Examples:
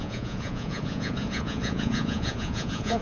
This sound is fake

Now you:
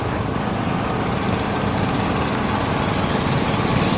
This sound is real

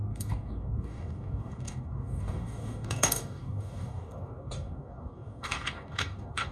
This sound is fake